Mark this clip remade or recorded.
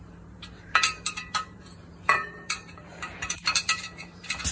remade